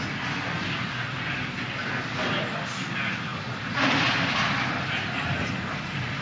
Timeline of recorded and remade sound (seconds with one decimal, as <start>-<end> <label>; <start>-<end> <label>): 0.0-6.2 recorded